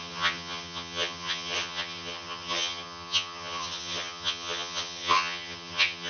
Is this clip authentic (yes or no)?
no